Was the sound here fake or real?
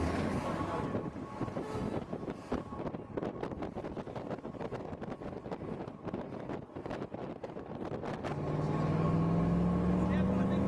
real